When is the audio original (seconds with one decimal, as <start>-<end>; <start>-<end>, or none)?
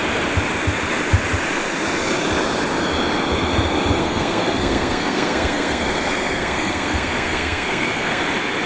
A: 0.0-4.0; 8.2-8.7